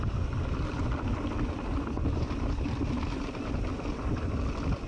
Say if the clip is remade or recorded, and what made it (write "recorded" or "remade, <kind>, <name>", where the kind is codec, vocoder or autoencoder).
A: recorded